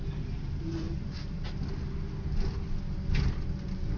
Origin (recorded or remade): recorded